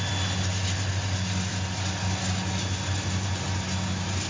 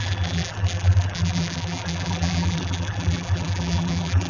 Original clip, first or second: first